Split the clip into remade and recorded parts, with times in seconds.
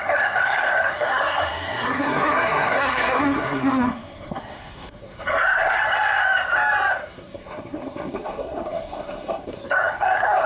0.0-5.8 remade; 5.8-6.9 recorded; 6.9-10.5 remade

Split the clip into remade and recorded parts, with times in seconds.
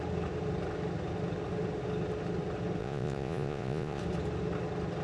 0.0-2.8 recorded; 2.8-4.0 remade; 4.0-5.0 recorded